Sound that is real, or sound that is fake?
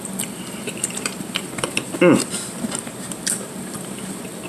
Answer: fake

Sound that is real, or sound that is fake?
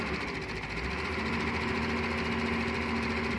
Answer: real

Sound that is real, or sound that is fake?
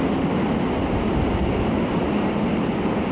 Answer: real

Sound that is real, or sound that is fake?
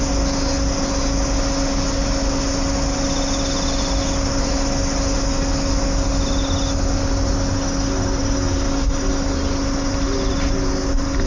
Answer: real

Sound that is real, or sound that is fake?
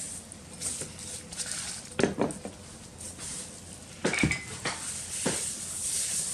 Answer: real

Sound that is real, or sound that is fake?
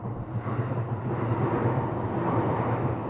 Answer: real